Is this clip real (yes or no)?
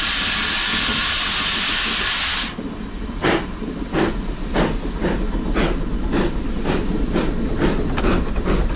yes